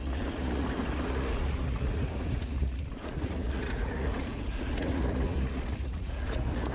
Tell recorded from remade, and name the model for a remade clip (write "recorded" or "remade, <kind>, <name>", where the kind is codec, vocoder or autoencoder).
remade, vocoder, Vocos